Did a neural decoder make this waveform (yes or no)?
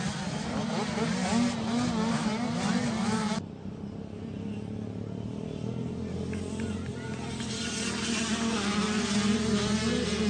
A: no